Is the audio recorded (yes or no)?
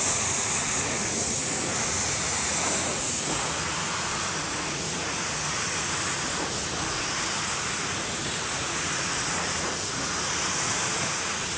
no